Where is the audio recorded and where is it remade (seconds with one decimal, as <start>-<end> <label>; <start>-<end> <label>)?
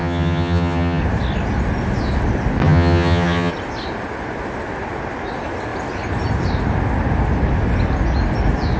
0.0-1.0 remade; 1.0-2.6 recorded; 2.6-3.5 remade; 3.5-8.8 recorded